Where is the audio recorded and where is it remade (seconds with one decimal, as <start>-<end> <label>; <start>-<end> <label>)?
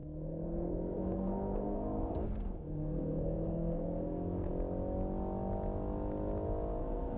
0.0-4.5 remade; 4.5-6.8 recorded; 6.8-7.2 remade